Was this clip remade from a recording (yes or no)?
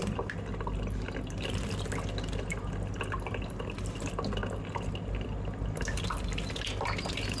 no